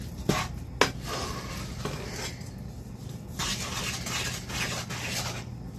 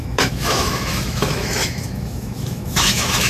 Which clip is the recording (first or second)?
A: first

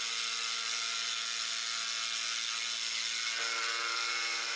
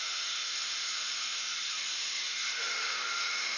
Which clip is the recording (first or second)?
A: first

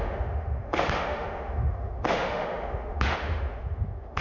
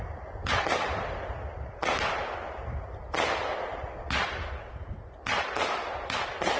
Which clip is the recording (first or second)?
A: second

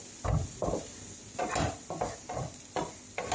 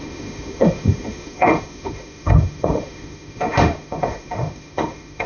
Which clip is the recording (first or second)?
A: first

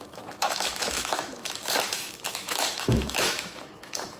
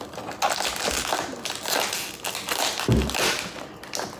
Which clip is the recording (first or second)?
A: second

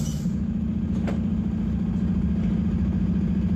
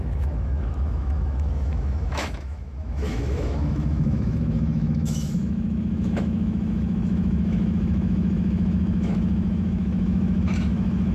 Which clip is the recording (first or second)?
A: first